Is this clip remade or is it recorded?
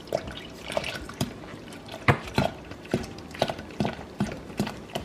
remade